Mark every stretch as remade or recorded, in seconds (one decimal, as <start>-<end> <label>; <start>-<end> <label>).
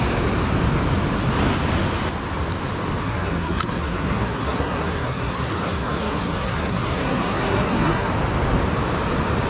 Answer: 0.0-3.0 recorded; 3.0-8.1 remade; 8.1-9.5 recorded